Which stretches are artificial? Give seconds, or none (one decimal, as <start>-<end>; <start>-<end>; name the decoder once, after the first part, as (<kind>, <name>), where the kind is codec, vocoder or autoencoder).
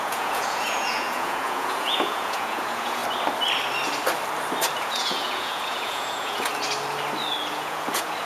0.0-3.0 (vocoder, Vocos); 4.8-6.5; 7.5-8.3